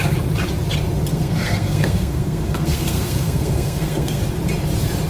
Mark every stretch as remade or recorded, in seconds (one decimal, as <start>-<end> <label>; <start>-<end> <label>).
0.0-1.1 recorded; 1.1-4.2 remade; 4.2-5.1 recorded